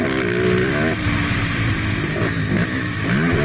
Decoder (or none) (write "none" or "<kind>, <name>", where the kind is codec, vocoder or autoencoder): none